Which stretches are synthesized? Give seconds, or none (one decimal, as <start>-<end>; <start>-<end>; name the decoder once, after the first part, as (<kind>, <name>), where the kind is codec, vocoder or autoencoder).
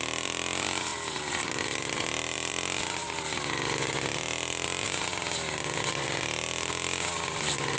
none